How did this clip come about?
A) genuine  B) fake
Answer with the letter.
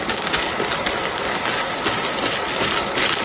A